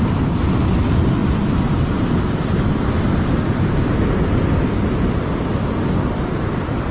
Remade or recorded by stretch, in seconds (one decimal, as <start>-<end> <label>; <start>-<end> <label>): 0.0-6.9 recorded